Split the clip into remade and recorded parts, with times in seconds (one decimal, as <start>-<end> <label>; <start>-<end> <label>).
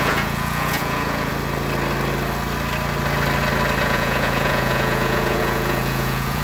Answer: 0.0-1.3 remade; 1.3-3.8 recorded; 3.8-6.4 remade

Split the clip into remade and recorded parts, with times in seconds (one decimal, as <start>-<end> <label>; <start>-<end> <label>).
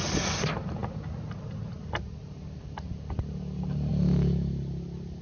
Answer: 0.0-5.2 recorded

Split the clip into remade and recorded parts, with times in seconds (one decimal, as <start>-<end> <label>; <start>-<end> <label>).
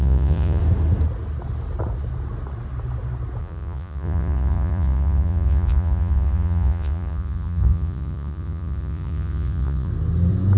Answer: 0.0-0.6 remade; 0.6-3.4 recorded; 3.4-9.9 remade; 9.9-10.6 recorded